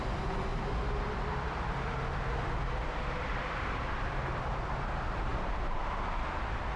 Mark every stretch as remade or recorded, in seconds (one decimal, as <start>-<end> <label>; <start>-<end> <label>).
0.0-0.5 remade; 0.5-1.1 recorded; 1.1-5.3 remade; 5.3-5.8 recorded; 5.8-6.8 remade